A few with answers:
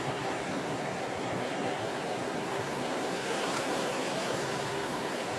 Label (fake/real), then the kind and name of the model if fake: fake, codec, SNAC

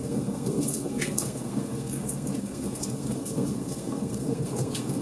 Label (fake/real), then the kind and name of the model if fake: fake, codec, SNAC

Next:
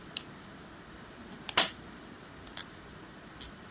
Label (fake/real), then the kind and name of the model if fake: real